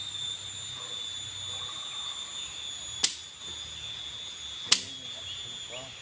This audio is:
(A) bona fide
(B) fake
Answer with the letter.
A